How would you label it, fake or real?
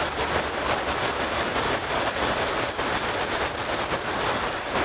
real